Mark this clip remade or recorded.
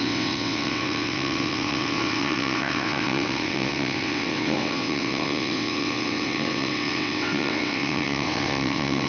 remade